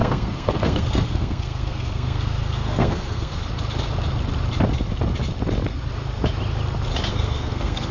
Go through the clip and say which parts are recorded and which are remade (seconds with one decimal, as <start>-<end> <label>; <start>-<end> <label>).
0.0-3.4 remade; 3.4-7.1 recorded; 7.1-7.9 remade